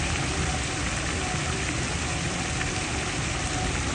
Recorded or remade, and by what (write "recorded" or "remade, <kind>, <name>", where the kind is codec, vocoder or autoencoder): recorded